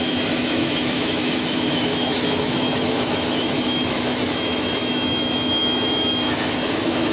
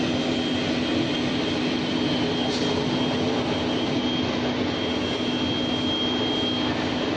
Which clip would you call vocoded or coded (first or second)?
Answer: first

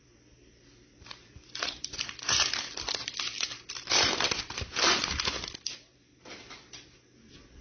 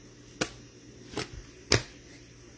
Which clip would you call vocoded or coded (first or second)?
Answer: first